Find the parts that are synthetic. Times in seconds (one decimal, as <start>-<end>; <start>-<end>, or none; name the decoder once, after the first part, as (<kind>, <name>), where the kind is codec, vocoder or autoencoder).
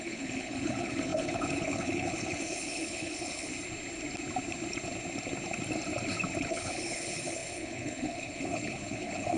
0.0-3.5 (codec, HILCodec); 6.5-9.4